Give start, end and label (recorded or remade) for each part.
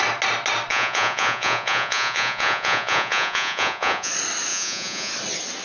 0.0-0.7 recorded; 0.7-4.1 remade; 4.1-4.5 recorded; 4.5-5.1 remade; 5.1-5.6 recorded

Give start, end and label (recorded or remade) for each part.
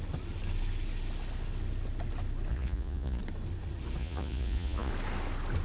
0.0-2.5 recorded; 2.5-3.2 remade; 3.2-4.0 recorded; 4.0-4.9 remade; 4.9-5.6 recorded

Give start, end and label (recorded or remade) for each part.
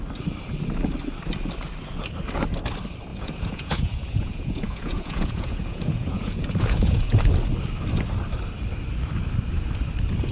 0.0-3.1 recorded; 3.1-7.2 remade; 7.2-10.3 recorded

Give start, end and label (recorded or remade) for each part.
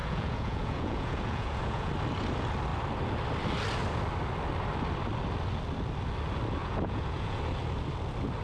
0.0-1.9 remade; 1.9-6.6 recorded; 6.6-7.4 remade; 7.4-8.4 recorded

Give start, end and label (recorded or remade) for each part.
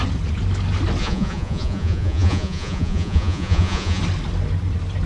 0.0-1.0 recorded; 1.0-4.0 remade; 4.0-5.1 recorded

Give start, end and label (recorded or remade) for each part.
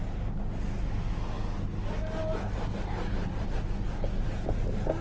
0.0-5.0 recorded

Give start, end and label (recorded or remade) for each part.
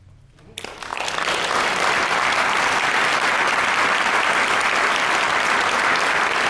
0.0-6.5 recorded